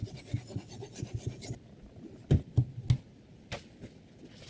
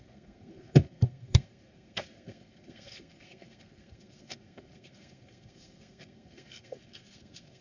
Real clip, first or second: first